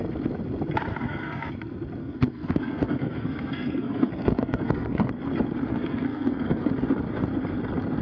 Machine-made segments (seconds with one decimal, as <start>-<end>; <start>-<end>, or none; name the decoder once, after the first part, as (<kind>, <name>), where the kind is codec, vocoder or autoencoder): 0.9-1.5 (codec, SNAC); 2.0-5.1; 5.7-6.7